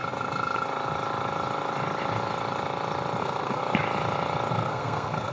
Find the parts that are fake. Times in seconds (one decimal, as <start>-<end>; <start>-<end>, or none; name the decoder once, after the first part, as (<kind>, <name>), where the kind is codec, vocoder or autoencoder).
3.2-3.6 (codec, SNAC); 4.5-5.3